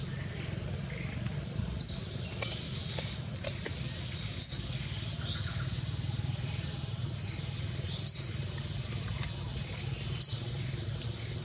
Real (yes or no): yes